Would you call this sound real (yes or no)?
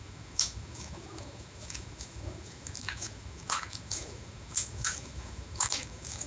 no